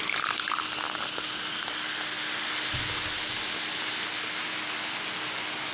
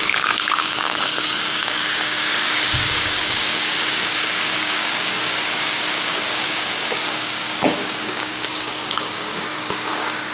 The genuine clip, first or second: first